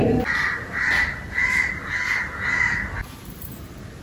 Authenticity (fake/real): real